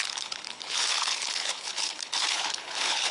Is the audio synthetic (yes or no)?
yes